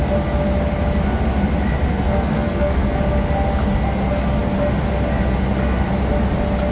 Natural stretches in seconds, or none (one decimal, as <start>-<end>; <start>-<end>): 0.0-1.9; 3.0-6.7